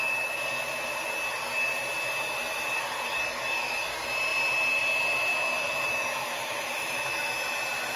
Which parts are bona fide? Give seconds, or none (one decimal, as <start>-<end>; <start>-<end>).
0.0-5.3; 7.3-8.0